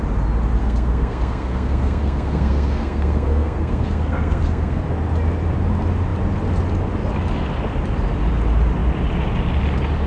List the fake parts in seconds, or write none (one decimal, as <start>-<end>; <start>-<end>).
0.6-4.8